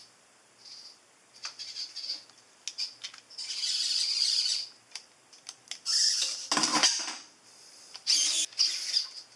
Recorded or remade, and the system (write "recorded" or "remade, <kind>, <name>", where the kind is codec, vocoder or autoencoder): recorded